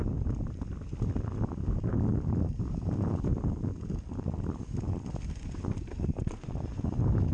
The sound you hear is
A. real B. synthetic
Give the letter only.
A